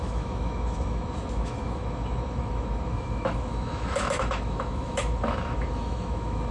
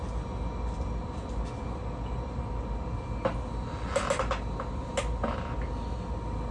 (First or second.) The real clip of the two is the second